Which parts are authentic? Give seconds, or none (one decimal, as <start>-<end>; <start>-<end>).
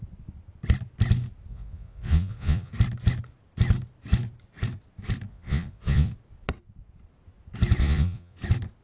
0.0-1.5; 2.7-5.3; 6.1-7.8; 8.4-8.8